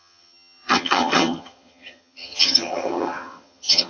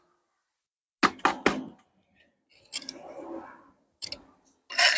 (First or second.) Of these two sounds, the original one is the second